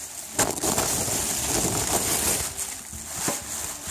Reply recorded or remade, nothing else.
recorded